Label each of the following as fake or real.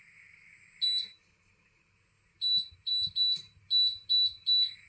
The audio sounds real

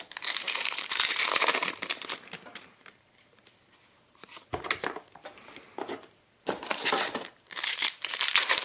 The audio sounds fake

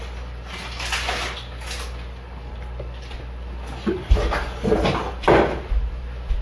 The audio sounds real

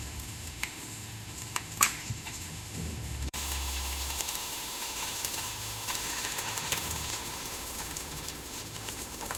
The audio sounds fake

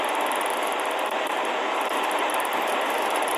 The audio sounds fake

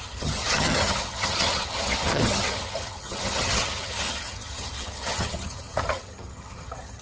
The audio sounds fake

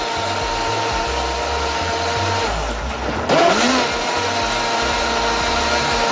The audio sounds real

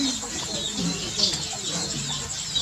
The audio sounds real